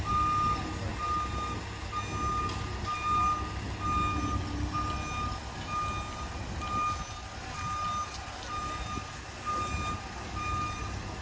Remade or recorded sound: recorded